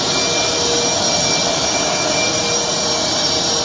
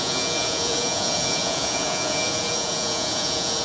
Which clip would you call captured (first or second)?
first